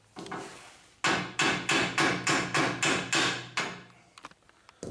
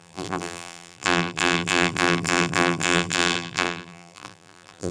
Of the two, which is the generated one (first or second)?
second